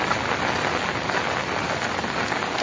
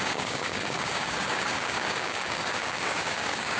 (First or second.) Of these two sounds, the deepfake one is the second